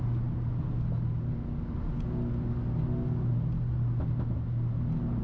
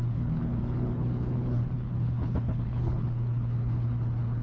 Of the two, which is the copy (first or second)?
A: second